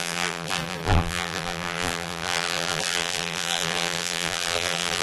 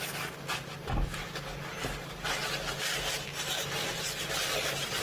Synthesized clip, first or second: first